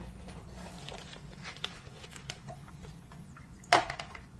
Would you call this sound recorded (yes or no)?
no